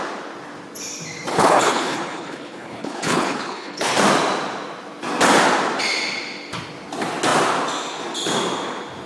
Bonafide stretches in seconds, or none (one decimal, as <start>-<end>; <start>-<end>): 0.0-1.3; 3.9-9.1